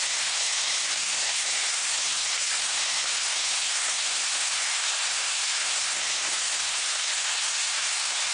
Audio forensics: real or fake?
fake